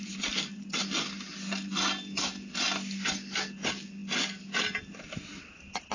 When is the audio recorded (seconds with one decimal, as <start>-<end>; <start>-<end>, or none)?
0.0-5.9

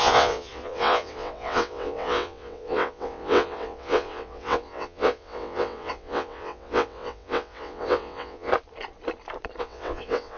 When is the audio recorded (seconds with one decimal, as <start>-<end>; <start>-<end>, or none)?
8.5-9.6

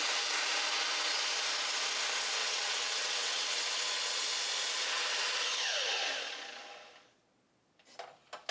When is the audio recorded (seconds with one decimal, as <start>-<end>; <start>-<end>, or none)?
0.0-2.4; 4.2-8.5

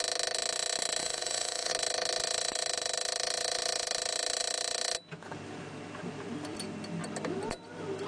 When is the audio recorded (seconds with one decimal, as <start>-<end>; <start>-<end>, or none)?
0.0-1.0; 1.7-8.1

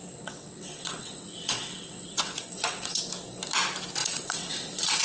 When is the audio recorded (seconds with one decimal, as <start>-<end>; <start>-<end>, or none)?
3.0-4.0

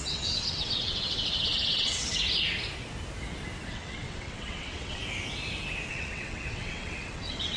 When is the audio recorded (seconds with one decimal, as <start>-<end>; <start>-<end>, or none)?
2.2-3.7; 5.0-5.9